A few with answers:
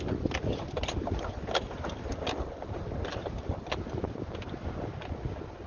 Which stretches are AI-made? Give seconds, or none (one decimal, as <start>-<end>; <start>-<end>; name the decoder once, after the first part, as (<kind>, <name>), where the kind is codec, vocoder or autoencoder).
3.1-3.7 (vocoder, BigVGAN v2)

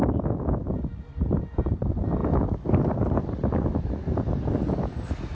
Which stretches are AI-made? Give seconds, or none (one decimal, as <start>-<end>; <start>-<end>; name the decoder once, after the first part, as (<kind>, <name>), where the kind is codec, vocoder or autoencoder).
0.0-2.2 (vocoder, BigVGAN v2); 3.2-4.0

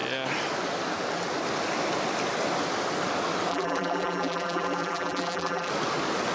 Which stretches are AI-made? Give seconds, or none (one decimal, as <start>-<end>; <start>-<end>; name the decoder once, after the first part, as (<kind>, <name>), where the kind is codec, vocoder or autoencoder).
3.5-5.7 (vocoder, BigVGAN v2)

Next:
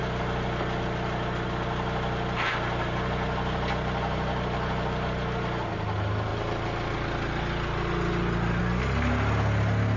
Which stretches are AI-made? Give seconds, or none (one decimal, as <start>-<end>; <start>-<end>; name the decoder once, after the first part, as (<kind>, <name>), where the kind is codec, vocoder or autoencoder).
none

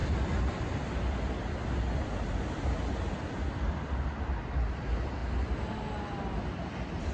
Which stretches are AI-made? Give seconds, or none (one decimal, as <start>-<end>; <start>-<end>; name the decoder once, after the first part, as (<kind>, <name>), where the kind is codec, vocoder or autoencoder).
none

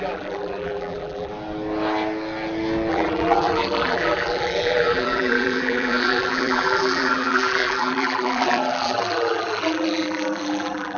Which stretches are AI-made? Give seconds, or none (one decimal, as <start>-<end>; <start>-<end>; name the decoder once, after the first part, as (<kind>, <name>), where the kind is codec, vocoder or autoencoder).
0.0-1.3 (vocoder, BigVGAN v2); 2.9-11.0

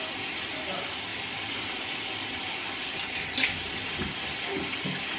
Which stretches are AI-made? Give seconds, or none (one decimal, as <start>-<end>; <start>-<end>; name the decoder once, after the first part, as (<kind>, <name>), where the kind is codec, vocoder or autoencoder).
1.1-3.9 (vocoder, BigVGAN v2)

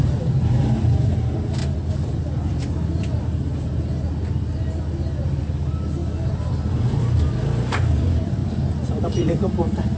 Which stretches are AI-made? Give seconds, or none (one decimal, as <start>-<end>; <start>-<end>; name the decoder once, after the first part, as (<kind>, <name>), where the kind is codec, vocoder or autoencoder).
1.6-5.4 (vocoder, BigVGAN v2); 8.4-10.0